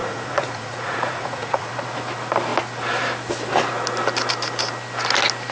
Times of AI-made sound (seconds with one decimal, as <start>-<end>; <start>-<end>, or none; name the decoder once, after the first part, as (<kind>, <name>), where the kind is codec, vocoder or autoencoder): 0.0-1.7 (vocoder, Vocos)